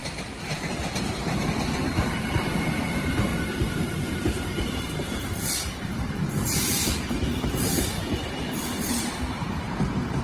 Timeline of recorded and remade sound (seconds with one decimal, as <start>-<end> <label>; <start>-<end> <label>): 0.0-2.3 recorded; 2.3-3.3 remade; 3.3-4.1 recorded; 4.1-10.2 remade